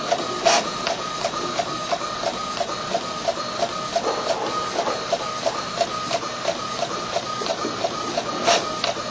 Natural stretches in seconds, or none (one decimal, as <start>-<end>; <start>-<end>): 0.0-4.7; 8.3-9.1